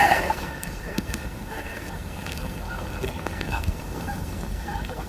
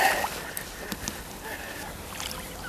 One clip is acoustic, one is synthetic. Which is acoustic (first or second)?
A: second